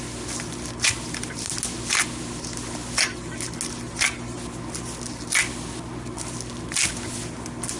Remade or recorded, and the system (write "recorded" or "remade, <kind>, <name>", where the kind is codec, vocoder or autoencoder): recorded